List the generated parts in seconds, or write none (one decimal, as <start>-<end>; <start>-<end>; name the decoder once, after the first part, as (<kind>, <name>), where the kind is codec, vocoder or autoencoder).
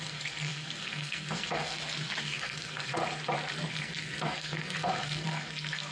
0.0-1.7 (codec, SNAC); 2.2-3.0; 3.7-5.9